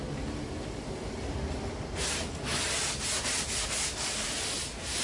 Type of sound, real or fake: real